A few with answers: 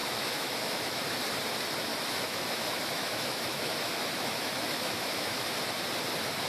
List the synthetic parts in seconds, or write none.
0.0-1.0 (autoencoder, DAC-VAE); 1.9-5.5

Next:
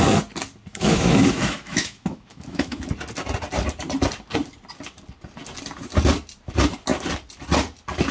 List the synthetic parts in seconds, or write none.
0.7-2.8 (autoencoder, DAC-VAE)

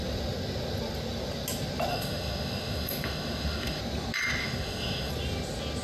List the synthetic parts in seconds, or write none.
1.9-3.8 (autoencoder, DAC-VAE); 4.4-5.1